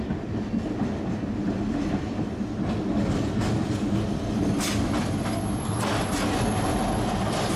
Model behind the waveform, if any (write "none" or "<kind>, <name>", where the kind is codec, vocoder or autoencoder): none